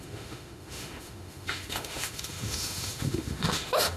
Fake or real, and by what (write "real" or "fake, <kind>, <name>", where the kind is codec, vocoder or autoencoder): fake, autoencoder, DAC-VAE